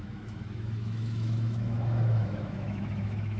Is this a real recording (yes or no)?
no